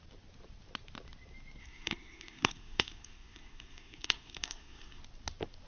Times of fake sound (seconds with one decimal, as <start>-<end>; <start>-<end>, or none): 1.6-5.0